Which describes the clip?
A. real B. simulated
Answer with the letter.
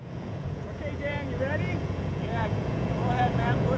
B